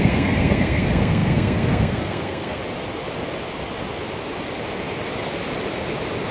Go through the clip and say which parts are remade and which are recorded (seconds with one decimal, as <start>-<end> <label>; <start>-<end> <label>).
0.0-2.6 remade; 2.6-6.3 recorded